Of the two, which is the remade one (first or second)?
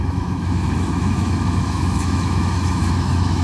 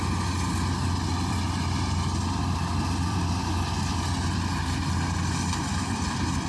first